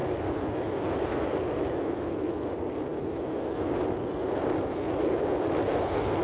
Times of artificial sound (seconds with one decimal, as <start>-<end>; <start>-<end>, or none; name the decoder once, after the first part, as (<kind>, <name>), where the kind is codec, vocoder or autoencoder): none